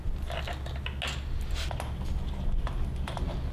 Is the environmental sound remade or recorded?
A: recorded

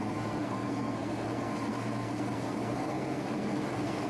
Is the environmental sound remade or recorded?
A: remade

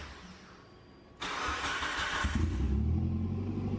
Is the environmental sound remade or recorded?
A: recorded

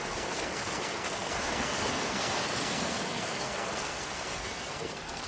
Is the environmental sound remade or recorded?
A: remade